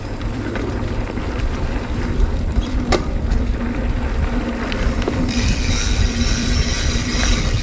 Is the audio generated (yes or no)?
yes